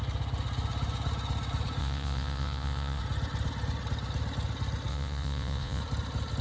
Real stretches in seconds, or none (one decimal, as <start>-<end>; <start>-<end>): 0.0-1.8; 3.0-4.9; 5.8-6.4